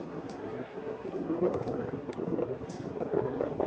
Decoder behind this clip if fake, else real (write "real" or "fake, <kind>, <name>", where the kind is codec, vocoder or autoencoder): fake, codec, SNAC